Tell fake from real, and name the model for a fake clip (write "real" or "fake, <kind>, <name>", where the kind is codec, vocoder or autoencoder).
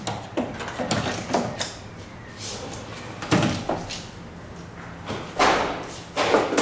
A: real